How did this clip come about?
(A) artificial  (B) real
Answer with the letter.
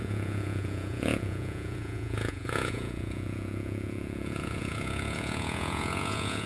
A